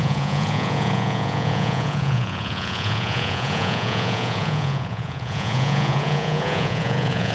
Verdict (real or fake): fake